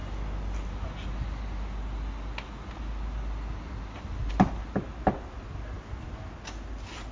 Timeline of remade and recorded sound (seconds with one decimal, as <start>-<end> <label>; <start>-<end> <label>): 0.0-7.1 recorded